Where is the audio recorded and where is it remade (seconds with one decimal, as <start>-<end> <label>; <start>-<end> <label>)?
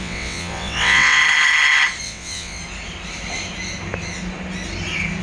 0.0-1.2 remade; 1.2-2.0 recorded; 2.0-2.6 remade; 2.6-5.2 recorded